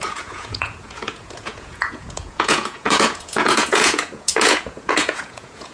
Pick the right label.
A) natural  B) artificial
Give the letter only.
B